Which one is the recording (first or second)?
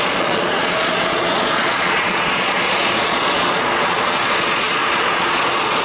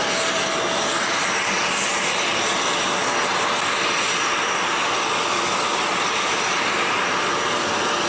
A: second